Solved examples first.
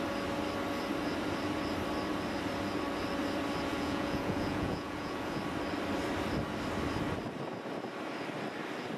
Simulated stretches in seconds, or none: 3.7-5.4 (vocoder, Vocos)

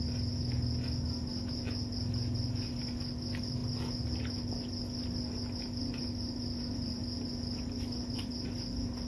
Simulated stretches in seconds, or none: none

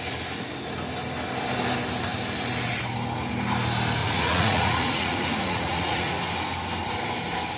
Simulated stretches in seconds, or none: 4.0-6.1 (vocoder, Vocos)

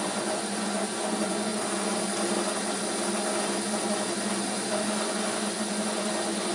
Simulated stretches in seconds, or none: 0.0-1.5 (vocoder, Vocos); 4.8-6.5

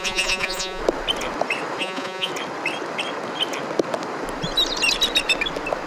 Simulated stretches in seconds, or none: 0.0-0.8 (vocoder, Vocos); 1.8-2.3

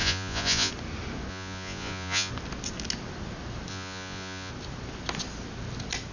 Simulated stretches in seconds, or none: 0.0-0.7 (vocoder, Vocos); 1.3-2.3; 3.7-4.5